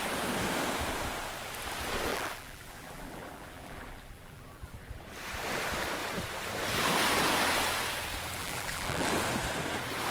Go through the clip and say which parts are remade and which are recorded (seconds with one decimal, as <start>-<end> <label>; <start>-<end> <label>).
0.0-2.1 recorded; 2.1-5.0 remade; 5.0-8.4 recorded; 8.4-9.1 remade; 9.1-10.1 recorded